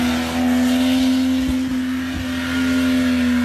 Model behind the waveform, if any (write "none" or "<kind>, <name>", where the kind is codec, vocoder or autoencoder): none